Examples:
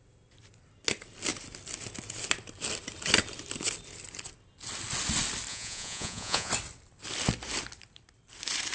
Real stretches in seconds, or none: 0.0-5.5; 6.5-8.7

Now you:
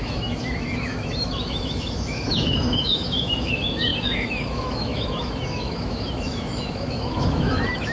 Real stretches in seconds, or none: none

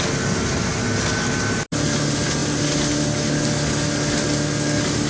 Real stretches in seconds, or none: 0.0-5.1

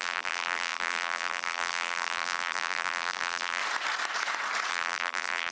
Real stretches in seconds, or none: 3.6-4.7

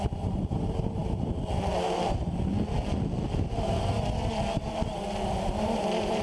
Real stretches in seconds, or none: 1.0-4.5

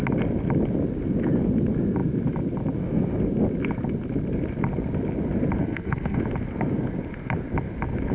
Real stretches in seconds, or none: 0.0-5.6; 6.2-8.1

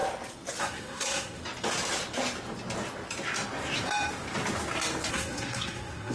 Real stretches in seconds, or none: 0.0-0.6; 1.4-5.1

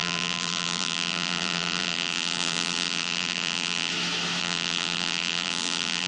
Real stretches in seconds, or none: 3.9-4.4